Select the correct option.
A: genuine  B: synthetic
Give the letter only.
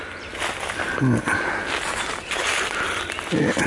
A